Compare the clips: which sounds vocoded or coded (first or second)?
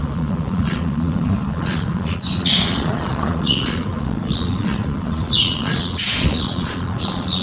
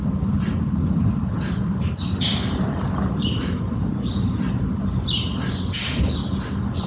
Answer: first